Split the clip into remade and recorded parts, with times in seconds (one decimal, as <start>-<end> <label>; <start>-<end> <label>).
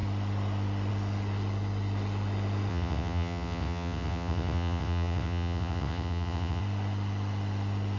0.0-2.7 recorded; 2.7-6.6 remade; 6.6-8.0 recorded